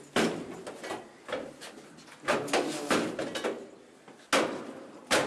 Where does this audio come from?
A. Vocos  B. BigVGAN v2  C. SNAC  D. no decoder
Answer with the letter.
D